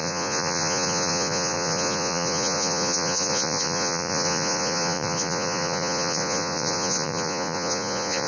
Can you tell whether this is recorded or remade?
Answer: remade